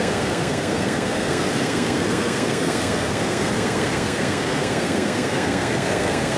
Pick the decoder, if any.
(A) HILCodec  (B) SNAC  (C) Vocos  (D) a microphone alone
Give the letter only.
B